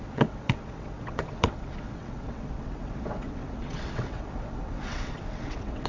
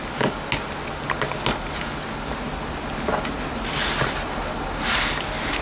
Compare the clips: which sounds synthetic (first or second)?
first